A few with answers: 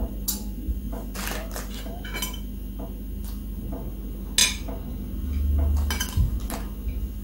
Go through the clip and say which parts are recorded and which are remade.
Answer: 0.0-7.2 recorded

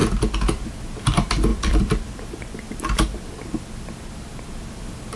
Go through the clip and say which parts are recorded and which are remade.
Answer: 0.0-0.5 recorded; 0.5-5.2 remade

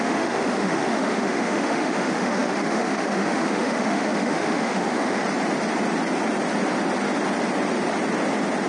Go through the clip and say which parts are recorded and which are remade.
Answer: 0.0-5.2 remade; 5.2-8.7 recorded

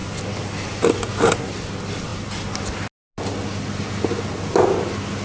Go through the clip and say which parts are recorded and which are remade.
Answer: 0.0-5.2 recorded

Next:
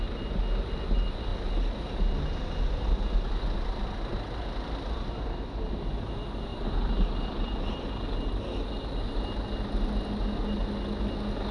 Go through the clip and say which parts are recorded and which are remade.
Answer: 0.0-11.5 recorded

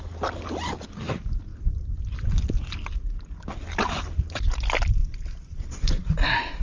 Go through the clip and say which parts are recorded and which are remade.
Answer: 0.0-1.5 recorded; 1.5-2.3 remade; 2.3-5.0 recorded; 5.0-6.6 remade

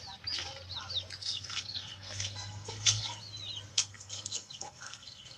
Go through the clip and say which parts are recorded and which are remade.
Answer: 0.0-1.2 recorded; 1.2-3.2 remade; 3.2-3.7 recorded; 3.7-5.4 remade